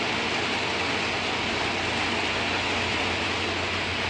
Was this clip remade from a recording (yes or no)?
no